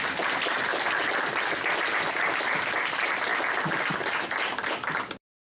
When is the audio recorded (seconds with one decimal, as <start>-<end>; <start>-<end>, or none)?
0.0-5.5